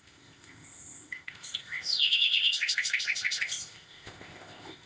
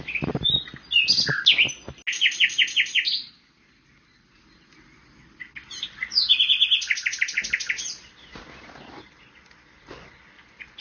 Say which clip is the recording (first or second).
second